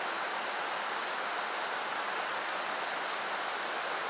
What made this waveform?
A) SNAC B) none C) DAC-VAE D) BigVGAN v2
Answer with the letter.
B